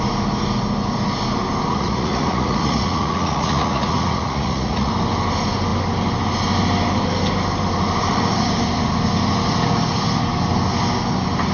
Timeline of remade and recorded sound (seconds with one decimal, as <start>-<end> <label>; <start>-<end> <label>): 0.0-1.7 recorded; 1.7-4.9 remade; 4.9-11.5 recorded